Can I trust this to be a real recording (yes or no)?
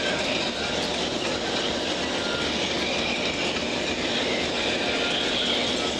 yes